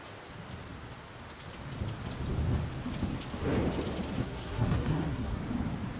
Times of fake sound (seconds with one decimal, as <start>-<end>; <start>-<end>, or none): 4.2-5.4